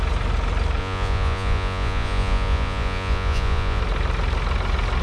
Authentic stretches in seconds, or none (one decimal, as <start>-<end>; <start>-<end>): 0.0-0.8; 3.8-5.0